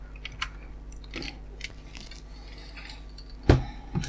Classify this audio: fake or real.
real